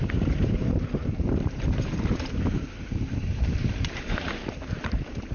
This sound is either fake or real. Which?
fake